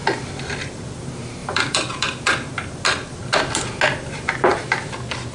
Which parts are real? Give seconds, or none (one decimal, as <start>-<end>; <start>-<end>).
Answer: 0.8-1.4; 2.5-4.5